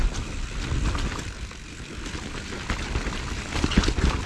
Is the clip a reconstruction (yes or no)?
no